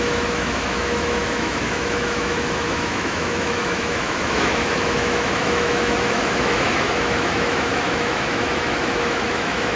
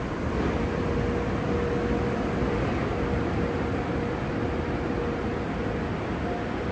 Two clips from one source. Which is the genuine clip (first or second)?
second